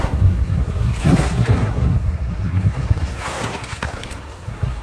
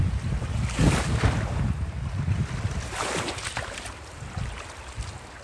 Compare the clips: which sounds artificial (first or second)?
first